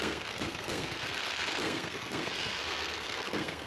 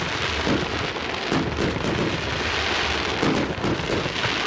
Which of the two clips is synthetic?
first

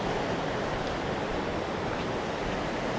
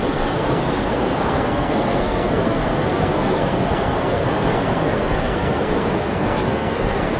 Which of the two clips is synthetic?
second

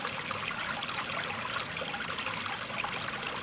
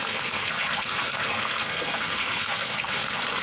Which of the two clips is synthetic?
second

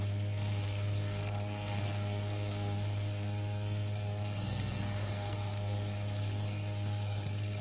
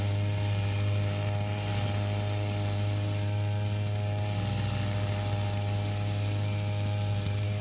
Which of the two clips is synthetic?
first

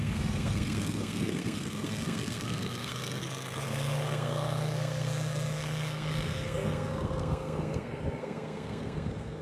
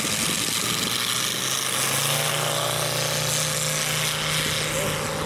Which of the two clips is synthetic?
first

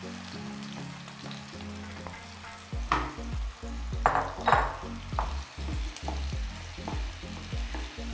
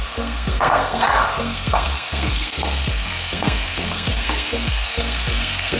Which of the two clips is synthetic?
second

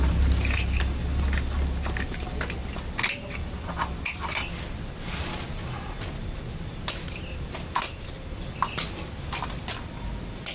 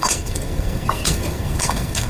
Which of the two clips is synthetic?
second